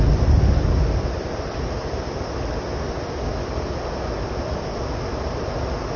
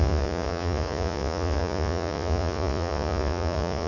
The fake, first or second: second